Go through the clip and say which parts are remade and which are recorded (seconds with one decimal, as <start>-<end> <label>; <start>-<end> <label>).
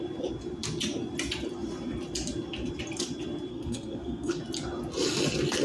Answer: 0.0-3.5 recorded; 3.5-4.4 remade; 4.4-5.6 recorded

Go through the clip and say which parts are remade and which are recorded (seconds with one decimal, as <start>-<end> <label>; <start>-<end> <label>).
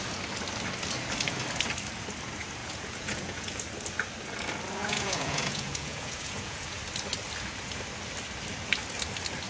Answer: 0.0-2.6 recorded; 2.6-3.6 remade; 3.6-4.8 recorded; 4.8-6.8 remade; 6.8-9.5 recorded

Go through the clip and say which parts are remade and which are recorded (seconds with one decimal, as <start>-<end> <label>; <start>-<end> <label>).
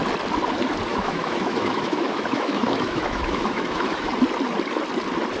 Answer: 0.0-0.9 recorded; 0.9-4.1 remade; 4.1-5.4 recorded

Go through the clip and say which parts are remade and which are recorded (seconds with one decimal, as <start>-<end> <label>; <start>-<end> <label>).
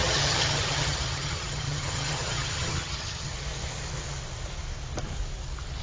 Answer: 0.0-3.3 remade; 3.3-5.8 recorded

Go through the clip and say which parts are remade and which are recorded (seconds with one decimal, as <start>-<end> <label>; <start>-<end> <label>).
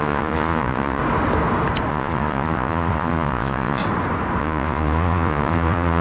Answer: 0.0-1.0 remade; 1.0-1.9 recorded; 1.9-3.8 remade; 3.8-4.4 recorded; 4.4-6.0 remade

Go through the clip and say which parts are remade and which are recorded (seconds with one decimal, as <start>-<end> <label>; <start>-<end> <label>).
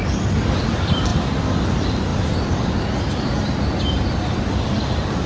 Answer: 0.0-5.3 recorded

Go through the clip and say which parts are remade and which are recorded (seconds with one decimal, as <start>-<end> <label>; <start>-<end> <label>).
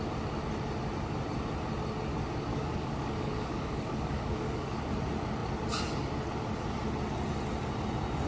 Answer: 0.0-2.5 recorded; 2.5-4.8 remade; 4.8-8.3 recorded